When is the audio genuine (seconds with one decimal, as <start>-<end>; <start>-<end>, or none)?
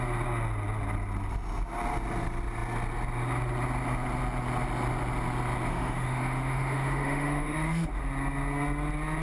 0.0-5.7; 8.0-9.2